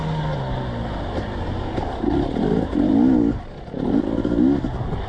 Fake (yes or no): no